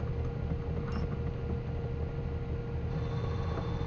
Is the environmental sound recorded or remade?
recorded